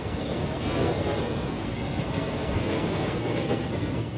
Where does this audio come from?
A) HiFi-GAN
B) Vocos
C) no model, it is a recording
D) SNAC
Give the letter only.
D